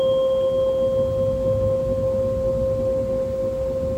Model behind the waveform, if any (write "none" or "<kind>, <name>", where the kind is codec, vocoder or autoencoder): none